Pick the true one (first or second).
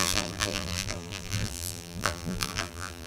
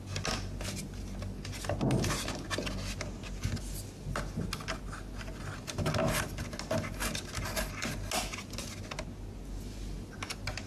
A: second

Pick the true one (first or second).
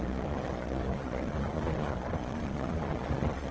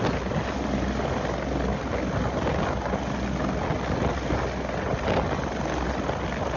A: second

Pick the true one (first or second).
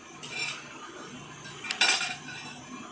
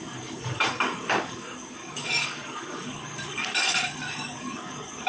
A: first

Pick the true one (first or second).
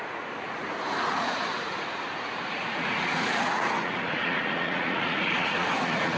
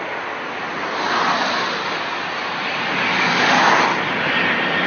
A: second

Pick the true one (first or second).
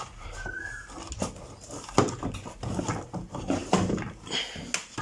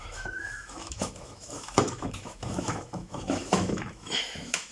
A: first